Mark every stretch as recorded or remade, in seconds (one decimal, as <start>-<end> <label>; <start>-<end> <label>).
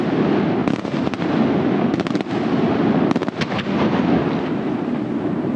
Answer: 0.0-5.6 recorded